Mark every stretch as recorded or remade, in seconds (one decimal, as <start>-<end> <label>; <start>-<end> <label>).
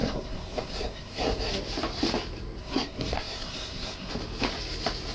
0.0-1.5 remade; 1.5-2.6 recorded; 2.6-4.1 remade; 4.1-5.1 recorded